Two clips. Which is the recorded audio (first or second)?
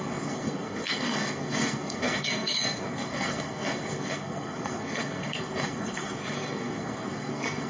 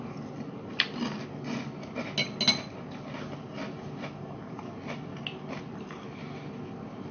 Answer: second